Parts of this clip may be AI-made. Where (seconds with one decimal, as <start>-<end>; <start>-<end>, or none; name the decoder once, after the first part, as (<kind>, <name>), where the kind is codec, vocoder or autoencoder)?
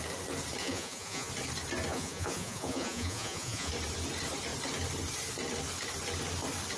0.6-1.3 (vocoder, Vocos); 1.9-3.7